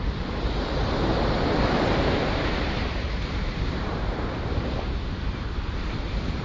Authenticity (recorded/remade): remade